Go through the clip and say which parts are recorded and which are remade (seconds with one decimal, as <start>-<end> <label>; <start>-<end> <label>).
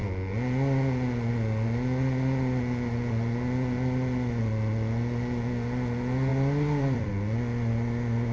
0.0-6.3 recorded; 6.3-7.1 remade; 7.1-8.3 recorded